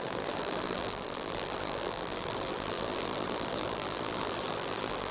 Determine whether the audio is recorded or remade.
remade